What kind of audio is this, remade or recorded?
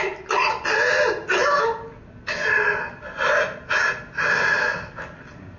recorded